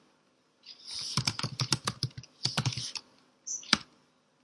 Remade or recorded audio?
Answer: recorded